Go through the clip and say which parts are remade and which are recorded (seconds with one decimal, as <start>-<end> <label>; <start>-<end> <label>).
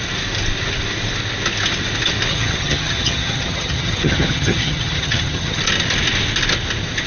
0.0-2.3 recorded; 2.3-5.6 remade; 5.6-7.1 recorded